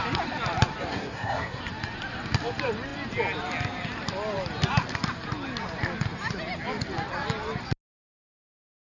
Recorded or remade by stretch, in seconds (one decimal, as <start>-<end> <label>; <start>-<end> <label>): 0.0-0.9 recorded; 0.9-1.6 remade; 1.6-9.0 recorded